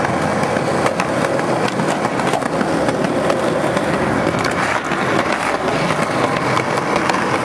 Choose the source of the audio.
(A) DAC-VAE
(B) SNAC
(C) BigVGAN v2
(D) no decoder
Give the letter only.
D